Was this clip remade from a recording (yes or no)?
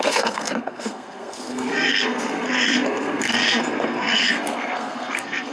yes